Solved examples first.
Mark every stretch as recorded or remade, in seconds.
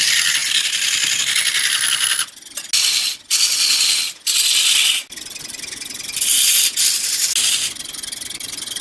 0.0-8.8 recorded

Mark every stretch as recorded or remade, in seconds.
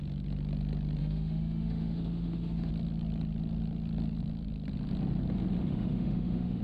0.0-1.0 recorded; 1.0-2.7 remade; 2.7-5.6 recorded; 5.6-6.6 remade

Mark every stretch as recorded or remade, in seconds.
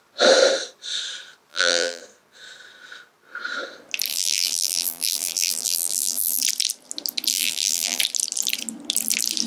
0.0-1.5 recorded; 1.5-2.0 remade; 2.0-4.1 recorded; 4.1-6.4 remade; 6.4-7.3 recorded; 7.3-8.0 remade; 8.0-9.5 recorded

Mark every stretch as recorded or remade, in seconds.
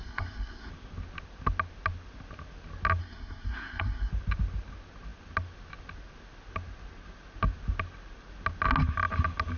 0.0-0.7 remade; 0.7-3.0 recorded; 3.0-4.1 remade; 4.1-9.6 recorded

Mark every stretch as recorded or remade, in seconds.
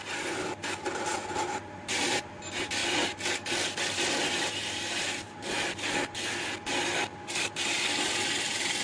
0.0-8.8 recorded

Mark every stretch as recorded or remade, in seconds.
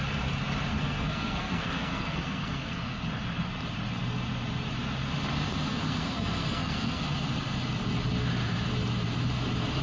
0.0-0.7 recorded; 0.7-3.0 remade; 3.0-5.7 recorded; 5.7-7.0 remade; 7.0-9.8 recorded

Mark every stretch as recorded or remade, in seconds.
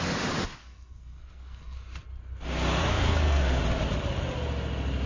0.0-0.6 recorded; 0.6-2.0 remade; 2.0-2.8 recorded; 2.8-3.6 remade; 3.6-5.1 recorded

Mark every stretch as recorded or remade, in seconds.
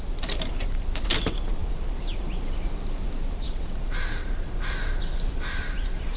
0.0-6.2 remade